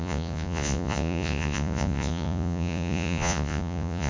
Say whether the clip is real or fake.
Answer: fake